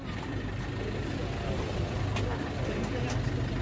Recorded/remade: recorded